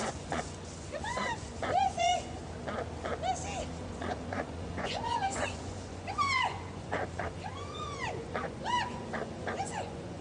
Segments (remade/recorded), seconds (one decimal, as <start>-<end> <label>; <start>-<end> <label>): 0.0-2.4 remade; 2.4-3.7 recorded; 3.7-10.2 remade